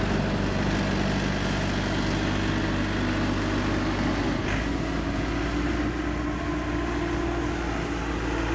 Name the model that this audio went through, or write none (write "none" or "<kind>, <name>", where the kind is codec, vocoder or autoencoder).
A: none